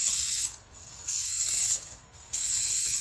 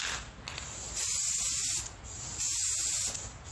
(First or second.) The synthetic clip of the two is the first